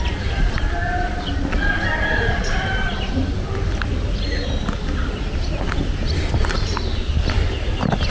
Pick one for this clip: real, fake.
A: real